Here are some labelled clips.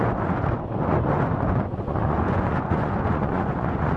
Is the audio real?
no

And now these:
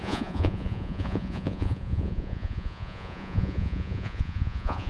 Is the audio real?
no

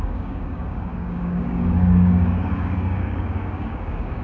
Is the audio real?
no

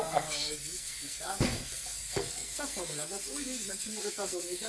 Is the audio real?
no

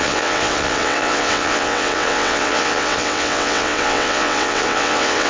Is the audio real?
no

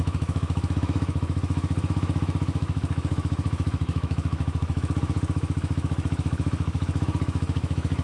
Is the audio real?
no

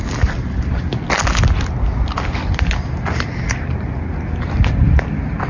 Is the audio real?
yes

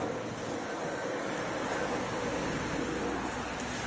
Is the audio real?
yes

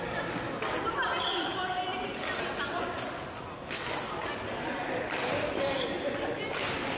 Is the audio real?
yes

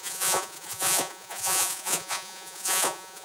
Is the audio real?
no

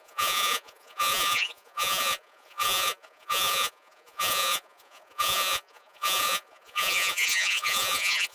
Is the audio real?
no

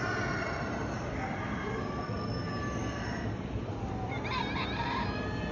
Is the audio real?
yes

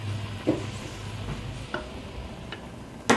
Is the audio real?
yes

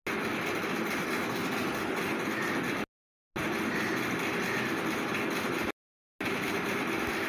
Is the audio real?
yes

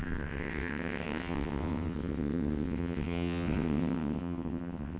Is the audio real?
no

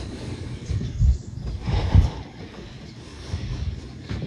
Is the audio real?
no